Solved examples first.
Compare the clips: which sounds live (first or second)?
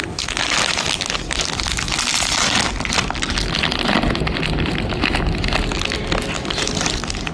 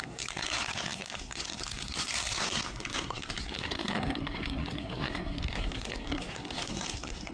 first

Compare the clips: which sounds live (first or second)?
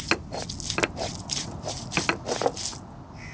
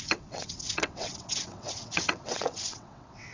first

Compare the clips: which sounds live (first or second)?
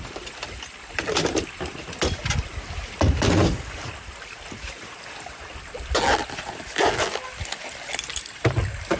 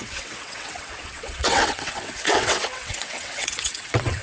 first